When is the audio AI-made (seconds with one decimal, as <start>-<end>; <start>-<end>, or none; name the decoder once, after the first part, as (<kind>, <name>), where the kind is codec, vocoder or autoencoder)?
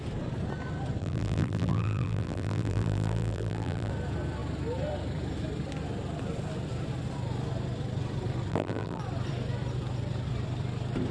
1.0-3.9 (vocoder, BigVGAN v2); 8.5-9.0